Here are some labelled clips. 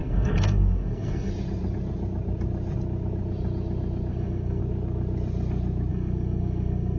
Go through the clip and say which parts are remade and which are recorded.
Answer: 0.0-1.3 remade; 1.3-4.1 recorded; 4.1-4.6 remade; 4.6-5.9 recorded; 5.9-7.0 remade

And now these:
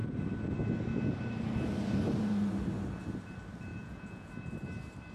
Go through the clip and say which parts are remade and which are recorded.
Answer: 0.0-3.7 recorded; 3.7-4.3 remade; 4.3-5.1 recorded